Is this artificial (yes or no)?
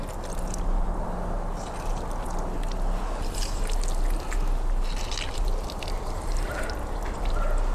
no